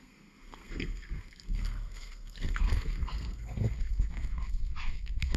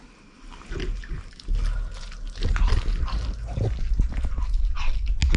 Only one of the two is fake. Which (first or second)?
first